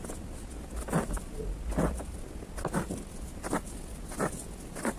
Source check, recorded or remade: recorded